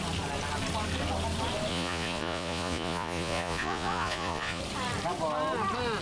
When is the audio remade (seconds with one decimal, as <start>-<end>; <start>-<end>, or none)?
1.7-4.6